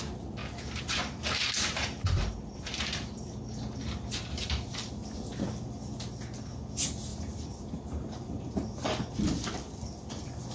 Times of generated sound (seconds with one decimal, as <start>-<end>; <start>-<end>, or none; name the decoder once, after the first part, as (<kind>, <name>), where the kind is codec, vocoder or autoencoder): 0.4-4.9 (vocoder, BigVGAN v2); 7.1-8.7